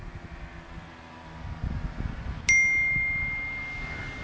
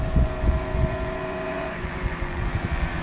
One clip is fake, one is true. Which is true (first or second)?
first